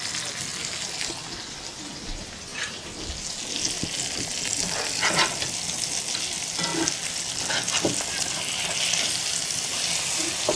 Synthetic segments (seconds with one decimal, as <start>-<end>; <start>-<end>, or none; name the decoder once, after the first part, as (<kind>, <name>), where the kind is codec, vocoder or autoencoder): none